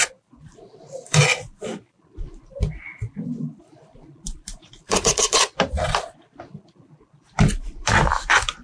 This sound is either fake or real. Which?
fake